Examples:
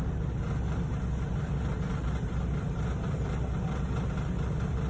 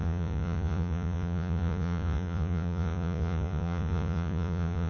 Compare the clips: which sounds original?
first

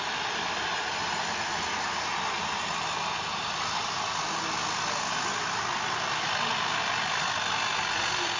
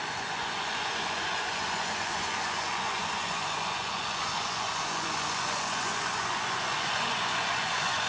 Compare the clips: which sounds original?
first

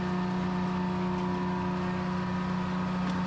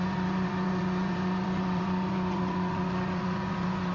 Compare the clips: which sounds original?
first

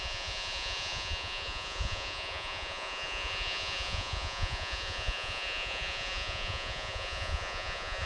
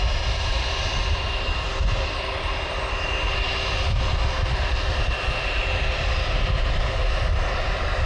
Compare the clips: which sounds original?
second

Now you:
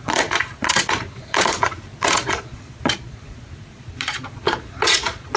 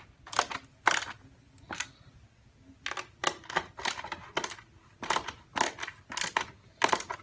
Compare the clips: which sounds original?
second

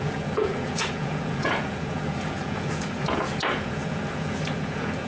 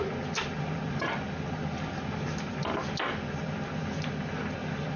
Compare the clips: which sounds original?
second